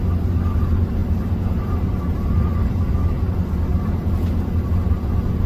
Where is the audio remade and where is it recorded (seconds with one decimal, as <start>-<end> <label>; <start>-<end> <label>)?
0.0-1.0 recorded; 1.0-3.3 remade; 3.3-3.7 recorded; 3.7-4.2 remade; 4.2-5.5 recorded